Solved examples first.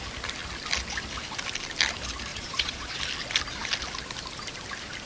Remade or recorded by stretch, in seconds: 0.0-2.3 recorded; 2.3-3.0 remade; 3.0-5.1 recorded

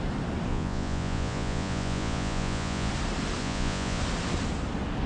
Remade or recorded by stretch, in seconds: 0.0-0.5 recorded; 0.5-2.9 remade; 2.9-3.4 recorded; 3.4-4.0 remade; 4.0-5.1 recorded

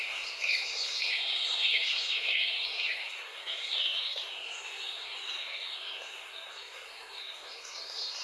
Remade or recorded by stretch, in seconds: 0.0-8.2 remade

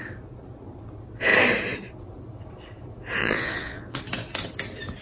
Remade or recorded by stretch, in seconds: 0.0-3.2 recorded; 3.2-4.0 remade; 4.0-5.0 recorded

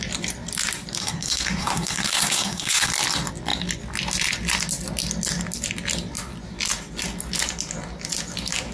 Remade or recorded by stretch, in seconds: 0.0-1.0 recorded; 1.0-2.9 remade; 2.9-8.7 recorded